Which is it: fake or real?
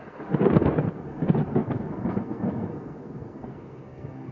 fake